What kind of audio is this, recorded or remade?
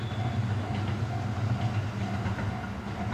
recorded